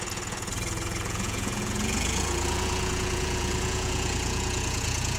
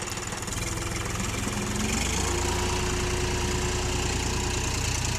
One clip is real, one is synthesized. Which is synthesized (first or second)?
first